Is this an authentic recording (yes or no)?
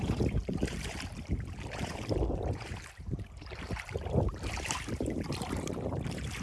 no